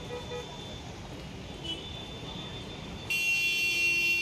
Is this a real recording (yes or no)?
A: yes